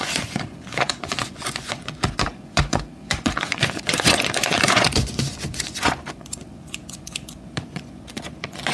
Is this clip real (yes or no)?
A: no